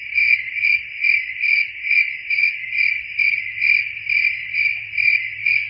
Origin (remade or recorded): recorded